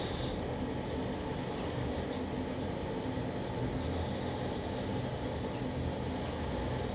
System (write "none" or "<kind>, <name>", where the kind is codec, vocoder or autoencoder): none